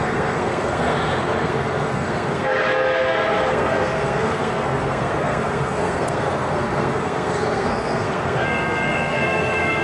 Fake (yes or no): yes